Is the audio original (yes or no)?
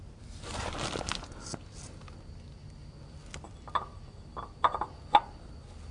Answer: yes